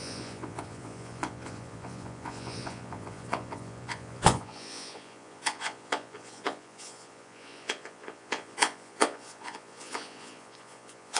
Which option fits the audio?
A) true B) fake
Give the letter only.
B